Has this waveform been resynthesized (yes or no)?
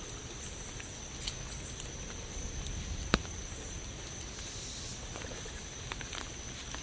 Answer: no